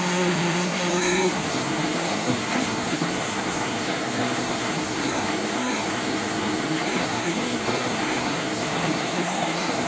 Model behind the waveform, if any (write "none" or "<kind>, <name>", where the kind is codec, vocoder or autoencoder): codec, SNAC